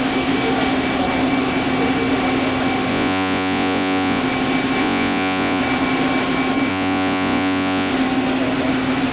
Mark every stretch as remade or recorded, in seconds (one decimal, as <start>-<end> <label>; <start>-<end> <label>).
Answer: 0.0-2.9 recorded; 2.9-4.2 remade; 4.2-4.8 recorded; 4.8-5.6 remade; 5.6-6.7 recorded; 6.7-7.9 remade; 7.9-9.1 recorded